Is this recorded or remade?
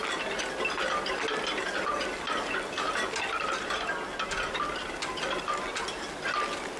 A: recorded